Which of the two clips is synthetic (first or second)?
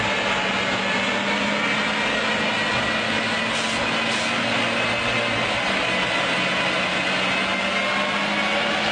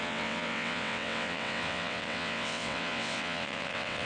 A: second